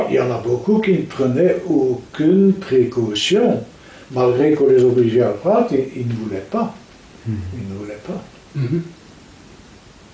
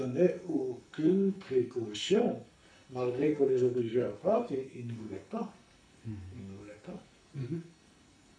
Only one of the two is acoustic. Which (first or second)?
first